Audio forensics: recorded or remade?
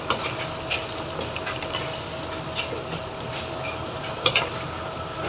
recorded